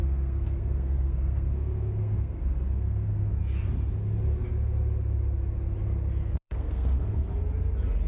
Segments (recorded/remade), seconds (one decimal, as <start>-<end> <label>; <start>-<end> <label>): 0.0-3.4 remade; 3.4-6.3 recorded; 6.3-7.3 remade; 7.3-8.1 recorded